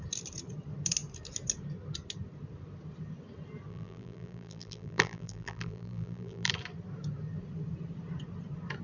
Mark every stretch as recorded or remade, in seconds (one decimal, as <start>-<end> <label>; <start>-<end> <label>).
0.0-3.7 recorded; 3.7-6.5 remade; 6.5-8.8 recorded